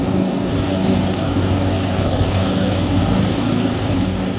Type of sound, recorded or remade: remade